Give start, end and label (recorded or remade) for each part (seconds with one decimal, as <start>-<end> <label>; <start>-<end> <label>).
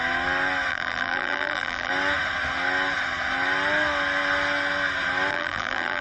0.0-0.7 recorded; 0.7-1.9 remade; 1.9-5.3 recorded; 5.3-6.0 remade